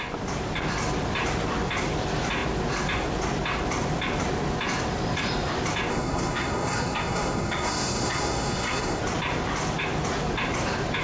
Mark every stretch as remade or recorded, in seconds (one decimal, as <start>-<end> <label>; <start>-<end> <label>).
0.0-5.9 recorded; 5.9-9.0 remade; 9.0-11.0 recorded